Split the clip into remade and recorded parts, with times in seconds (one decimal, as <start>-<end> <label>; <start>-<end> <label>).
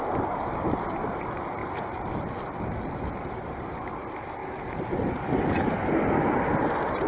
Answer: 0.0-4.4 remade; 4.4-4.9 recorded; 4.9-7.1 remade